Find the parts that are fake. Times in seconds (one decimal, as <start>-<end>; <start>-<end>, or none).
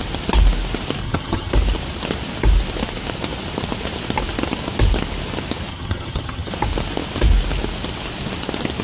1.0-1.5; 5.7-6.5